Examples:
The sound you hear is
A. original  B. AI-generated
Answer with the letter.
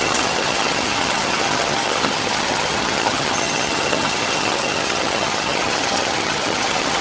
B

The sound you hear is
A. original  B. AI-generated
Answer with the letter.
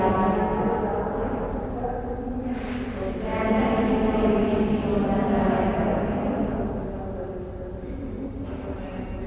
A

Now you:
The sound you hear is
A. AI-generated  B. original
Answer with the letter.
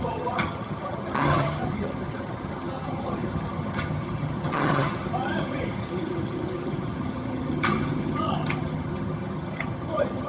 A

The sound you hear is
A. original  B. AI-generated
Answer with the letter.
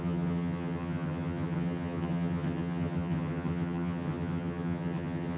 B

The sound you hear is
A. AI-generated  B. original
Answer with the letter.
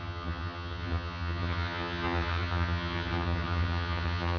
A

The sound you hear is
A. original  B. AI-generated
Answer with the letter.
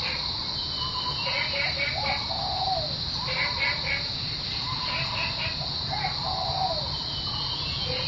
A